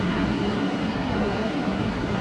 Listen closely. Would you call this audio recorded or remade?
remade